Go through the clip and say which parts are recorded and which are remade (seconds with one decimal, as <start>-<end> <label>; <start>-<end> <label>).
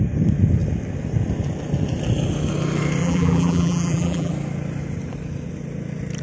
0.0-3.0 recorded; 3.0-4.3 remade; 4.3-6.2 recorded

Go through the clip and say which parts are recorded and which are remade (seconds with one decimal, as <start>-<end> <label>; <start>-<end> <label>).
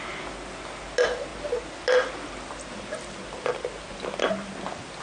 0.0-5.0 recorded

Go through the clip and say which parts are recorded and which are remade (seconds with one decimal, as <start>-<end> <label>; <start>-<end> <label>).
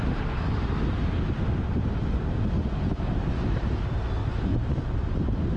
0.0-5.6 recorded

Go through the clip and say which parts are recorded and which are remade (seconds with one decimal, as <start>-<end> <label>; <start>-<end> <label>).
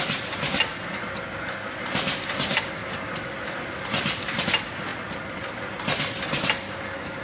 0.0-2.8 recorded; 2.8-4.4 remade; 4.4-4.9 recorded; 4.9-5.7 remade; 5.7-7.2 recorded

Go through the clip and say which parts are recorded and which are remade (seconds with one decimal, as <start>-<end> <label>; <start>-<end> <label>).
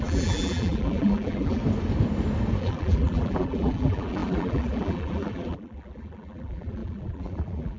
0.0-1.6 remade; 1.6-2.6 recorded; 2.6-7.8 remade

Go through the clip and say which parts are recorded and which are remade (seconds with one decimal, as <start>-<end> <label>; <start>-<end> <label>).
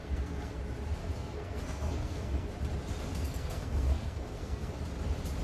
0.0-0.6 remade; 0.6-1.0 recorded; 1.0-2.5 remade; 2.5-3.1 recorded; 3.1-4.8 remade; 4.8-5.4 recorded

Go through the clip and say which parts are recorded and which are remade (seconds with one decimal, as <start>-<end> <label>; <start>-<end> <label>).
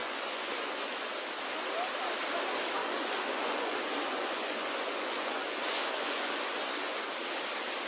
0.0-1.1 remade; 1.1-2.8 recorded; 2.8-7.0 remade; 7.0-7.9 recorded